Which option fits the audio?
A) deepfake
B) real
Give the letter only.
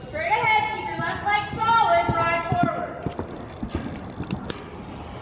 B